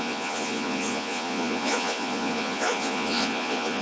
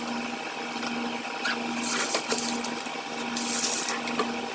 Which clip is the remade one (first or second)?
first